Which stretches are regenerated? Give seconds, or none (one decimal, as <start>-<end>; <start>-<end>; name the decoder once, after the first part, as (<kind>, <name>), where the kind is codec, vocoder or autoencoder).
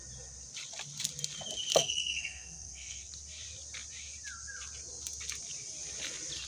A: 1.7-3.1 (codec, SNAC)